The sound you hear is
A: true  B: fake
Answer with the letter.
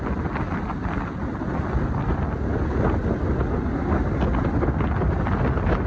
A